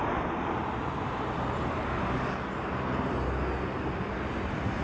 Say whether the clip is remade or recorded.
recorded